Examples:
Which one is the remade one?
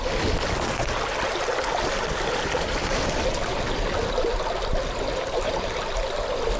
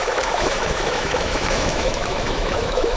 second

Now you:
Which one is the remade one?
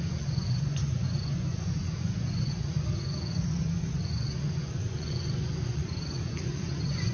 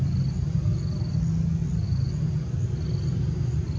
first